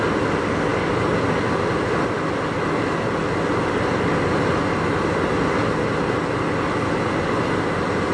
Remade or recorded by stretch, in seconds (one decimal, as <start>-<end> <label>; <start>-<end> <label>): 0.0-8.1 recorded